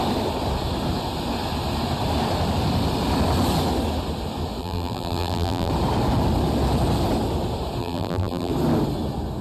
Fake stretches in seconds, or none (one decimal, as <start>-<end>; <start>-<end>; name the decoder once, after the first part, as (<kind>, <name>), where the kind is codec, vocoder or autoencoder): 4.6-5.7 (vocoder, BigVGAN v2); 7.8-8.5